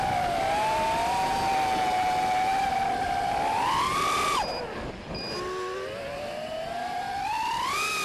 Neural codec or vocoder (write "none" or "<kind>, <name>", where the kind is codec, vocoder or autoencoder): none